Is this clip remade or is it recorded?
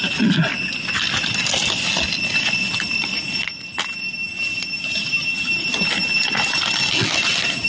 recorded